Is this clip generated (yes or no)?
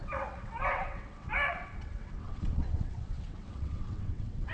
yes